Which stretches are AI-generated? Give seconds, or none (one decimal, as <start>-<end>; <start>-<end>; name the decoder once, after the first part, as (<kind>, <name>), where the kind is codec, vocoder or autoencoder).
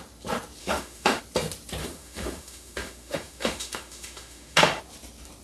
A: 0.6-1.2 (autoencoder, DAC-VAE); 1.8-4.8